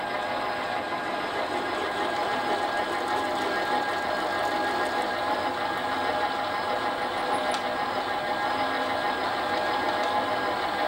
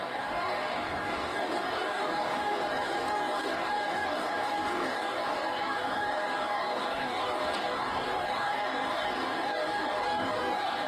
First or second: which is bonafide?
first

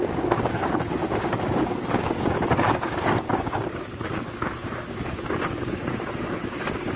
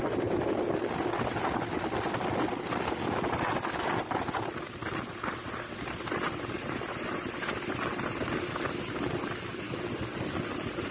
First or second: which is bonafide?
second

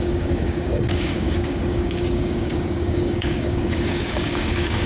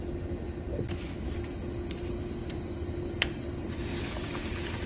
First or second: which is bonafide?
second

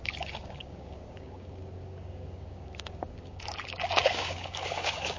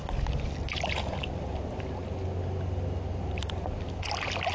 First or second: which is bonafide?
second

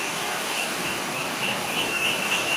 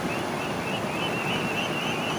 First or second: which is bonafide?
second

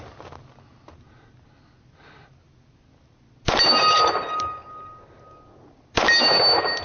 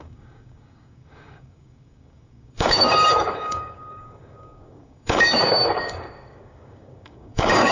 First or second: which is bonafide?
first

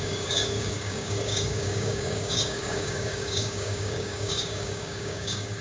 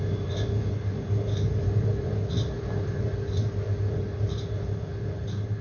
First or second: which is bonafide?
second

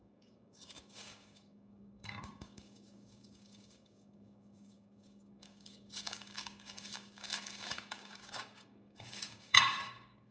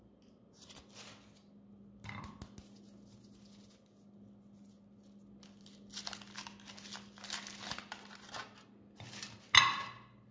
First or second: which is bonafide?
second